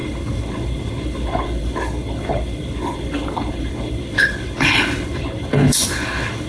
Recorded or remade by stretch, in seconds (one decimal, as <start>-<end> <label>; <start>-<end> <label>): 0.0-6.5 remade